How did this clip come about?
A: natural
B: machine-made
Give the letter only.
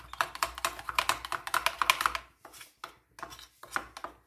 A